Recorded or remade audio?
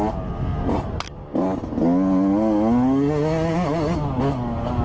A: recorded